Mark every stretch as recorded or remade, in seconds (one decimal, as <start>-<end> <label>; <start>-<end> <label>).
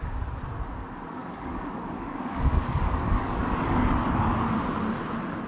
0.0-1.2 recorded; 1.2-4.5 remade; 4.5-5.5 recorded